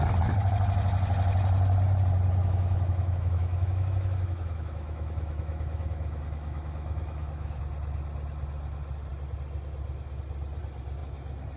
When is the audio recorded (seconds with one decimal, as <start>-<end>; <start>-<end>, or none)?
0.0-2.4; 7.6-11.6